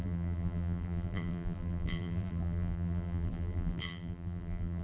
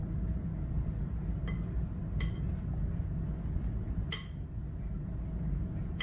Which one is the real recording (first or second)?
second